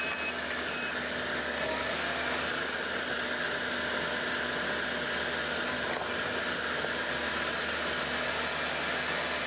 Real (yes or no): yes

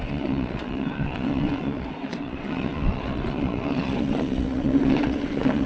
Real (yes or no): no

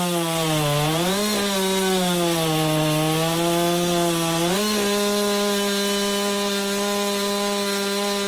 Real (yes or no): yes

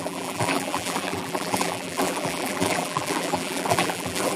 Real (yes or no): no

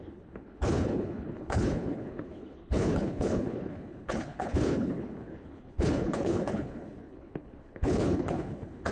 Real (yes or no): no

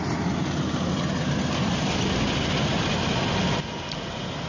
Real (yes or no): yes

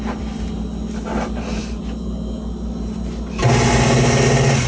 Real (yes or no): yes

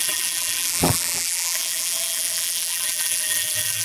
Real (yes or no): no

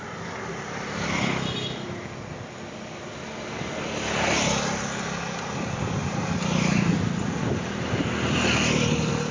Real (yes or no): yes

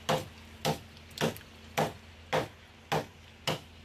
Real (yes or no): yes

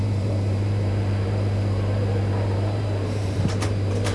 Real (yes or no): no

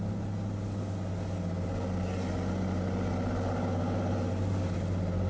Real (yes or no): yes